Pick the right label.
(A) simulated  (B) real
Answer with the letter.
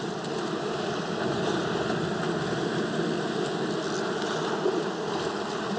B